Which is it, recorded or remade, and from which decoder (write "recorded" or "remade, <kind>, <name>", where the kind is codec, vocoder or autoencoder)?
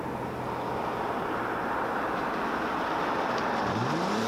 recorded